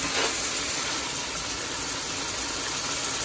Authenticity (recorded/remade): recorded